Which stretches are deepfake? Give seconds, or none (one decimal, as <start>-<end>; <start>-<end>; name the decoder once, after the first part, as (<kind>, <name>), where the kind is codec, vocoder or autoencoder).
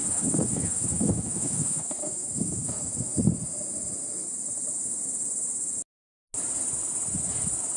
0.0-3.1 (autoencoder, DAC-VAE)